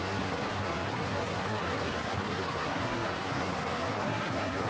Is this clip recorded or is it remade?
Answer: remade